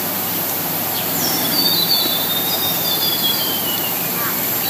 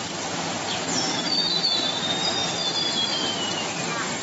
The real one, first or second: second